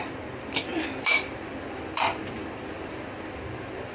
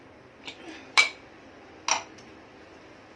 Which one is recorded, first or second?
second